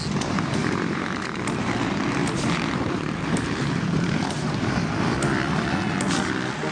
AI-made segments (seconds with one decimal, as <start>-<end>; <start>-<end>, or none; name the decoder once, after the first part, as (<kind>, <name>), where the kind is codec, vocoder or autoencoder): 0.6-1.2 (vocoder, BigVGAN v2); 2.2-4.7